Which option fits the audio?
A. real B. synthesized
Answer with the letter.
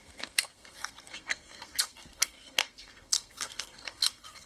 B